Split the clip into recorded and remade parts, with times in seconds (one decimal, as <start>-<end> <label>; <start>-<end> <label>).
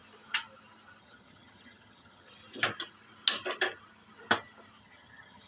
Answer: 0.0-1.0 recorded; 1.0-2.4 remade; 2.4-4.8 recorded; 4.8-5.5 remade